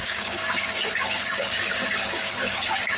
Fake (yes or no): yes